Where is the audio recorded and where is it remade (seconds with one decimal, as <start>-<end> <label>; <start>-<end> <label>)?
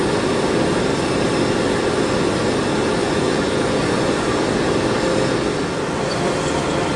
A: 0.0-3.0 recorded; 3.0-4.3 remade; 4.3-7.0 recorded